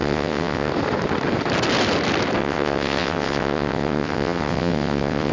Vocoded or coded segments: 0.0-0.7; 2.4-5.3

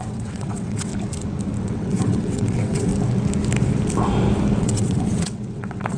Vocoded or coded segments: 0.0-0.9; 1.6-2.9; 4.6-6.0

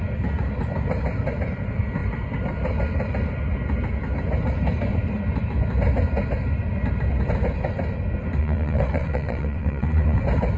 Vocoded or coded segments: 8.4-10.2

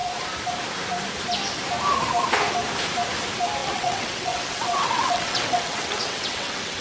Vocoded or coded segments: 3.6-6.8

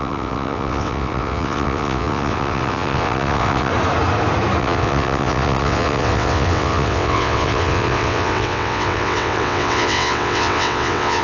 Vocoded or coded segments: 0.0-3.7; 4.6-11.2

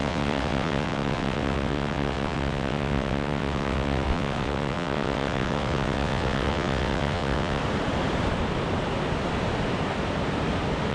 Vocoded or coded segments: 0.0-7.6

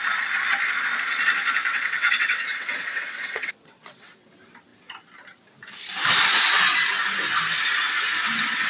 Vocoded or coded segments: 1.7-4.3; 8.2-8.7

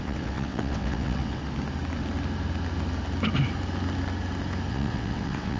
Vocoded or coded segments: 0.0-1.4; 4.7-5.6